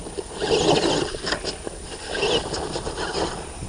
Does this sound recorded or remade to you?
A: recorded